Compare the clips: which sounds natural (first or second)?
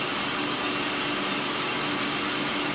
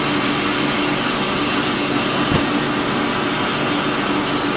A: second